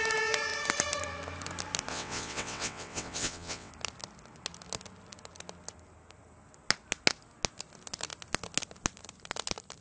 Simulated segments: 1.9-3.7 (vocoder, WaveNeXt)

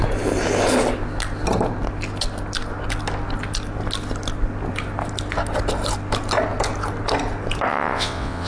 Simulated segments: 7.7-8.5 (vocoder, WaveNeXt)

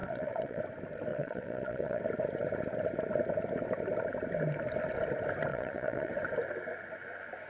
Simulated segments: 0.0-0.6 (vocoder, WaveNeXt); 1.1-2.0; 5.5-6.1

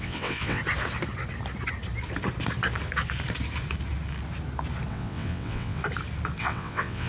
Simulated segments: 0.0-0.6 (vocoder, WaveNeXt); 4.9-5.8; 6.4-7.1

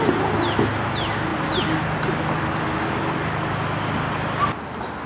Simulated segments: none